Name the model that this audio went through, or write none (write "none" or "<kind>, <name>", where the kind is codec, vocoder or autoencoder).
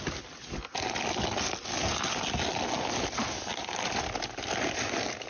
none